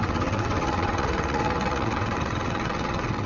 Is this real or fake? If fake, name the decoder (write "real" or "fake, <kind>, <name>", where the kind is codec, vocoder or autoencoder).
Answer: fake, vocoder, WaveNeXt